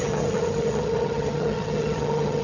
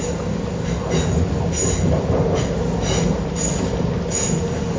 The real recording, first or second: second